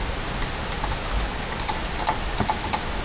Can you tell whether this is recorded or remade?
recorded